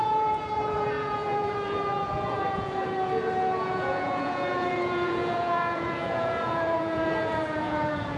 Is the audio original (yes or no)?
no